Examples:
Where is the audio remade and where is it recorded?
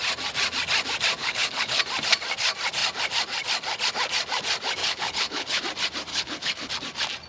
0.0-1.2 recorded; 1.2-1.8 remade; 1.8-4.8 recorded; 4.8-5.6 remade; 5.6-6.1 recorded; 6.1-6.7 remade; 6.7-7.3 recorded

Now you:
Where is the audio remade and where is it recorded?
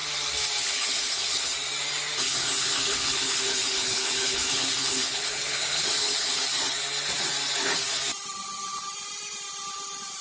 0.0-0.6 recorded; 0.6-1.5 remade; 1.5-2.2 recorded; 2.2-6.5 remade; 6.5-10.2 recorded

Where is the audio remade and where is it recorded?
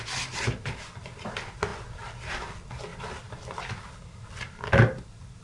0.0-5.4 recorded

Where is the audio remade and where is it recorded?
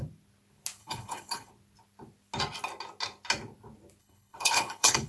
0.0-0.8 recorded; 0.8-1.5 remade; 1.5-4.0 recorded; 4.0-5.1 remade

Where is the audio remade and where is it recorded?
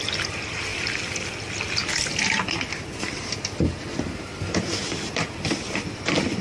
0.0-6.4 recorded